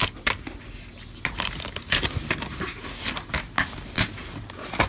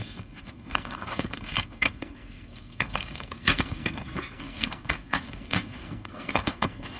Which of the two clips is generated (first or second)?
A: second